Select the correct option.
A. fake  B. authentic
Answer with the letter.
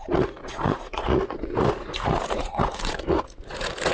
A